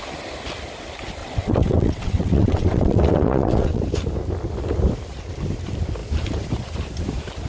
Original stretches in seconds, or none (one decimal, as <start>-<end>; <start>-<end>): 0.0-1.2; 3.8-7.5